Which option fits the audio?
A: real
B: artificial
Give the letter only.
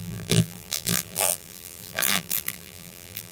B